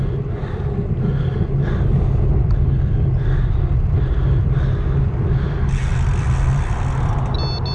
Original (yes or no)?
yes